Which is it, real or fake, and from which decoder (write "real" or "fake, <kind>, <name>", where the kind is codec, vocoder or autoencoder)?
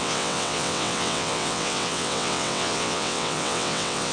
fake, vocoder, WaveNeXt